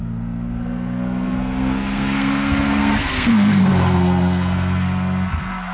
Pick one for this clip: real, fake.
fake